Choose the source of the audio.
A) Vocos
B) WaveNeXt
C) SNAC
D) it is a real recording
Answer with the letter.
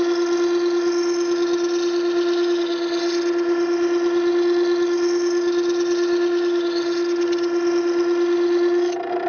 D